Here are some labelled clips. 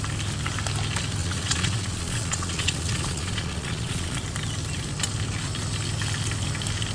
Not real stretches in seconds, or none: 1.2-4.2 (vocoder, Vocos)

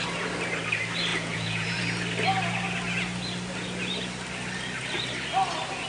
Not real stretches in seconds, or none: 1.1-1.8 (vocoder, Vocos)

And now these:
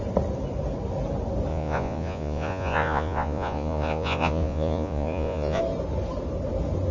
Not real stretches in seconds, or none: 1.5-5.6 (vocoder, Vocos)